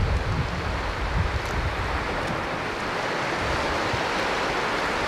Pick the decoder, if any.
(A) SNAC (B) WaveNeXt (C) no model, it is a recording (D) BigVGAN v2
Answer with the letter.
C